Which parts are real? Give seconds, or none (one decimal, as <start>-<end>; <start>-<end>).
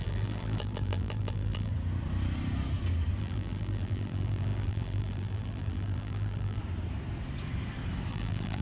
1.7-3.2; 6.6-8.1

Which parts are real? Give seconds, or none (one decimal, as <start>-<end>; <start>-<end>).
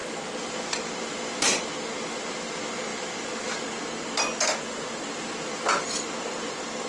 0.0-6.9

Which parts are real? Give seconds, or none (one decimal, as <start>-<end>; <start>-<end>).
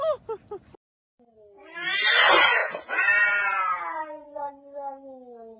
0.0-2.6; 4.5-5.6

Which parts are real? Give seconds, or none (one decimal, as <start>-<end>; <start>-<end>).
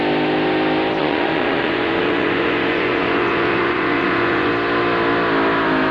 0.0-1.0; 4.5-5.9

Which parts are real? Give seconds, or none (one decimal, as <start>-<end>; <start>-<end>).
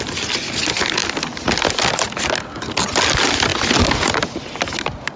0.0-5.2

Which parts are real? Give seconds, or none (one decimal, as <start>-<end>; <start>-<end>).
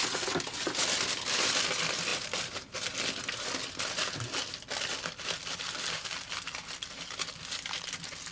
0.0-8.3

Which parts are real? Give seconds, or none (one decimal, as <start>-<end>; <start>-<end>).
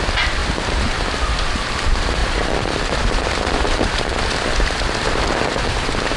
0.4-1.7